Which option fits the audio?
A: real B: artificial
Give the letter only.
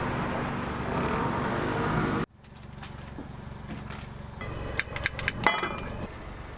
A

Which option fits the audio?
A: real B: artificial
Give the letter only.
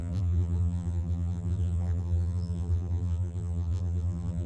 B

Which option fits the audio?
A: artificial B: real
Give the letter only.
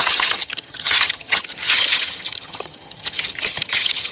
A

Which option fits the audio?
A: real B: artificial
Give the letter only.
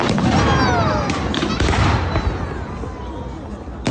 A